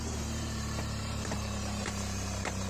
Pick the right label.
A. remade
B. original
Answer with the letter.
A